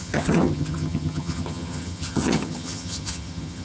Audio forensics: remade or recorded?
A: remade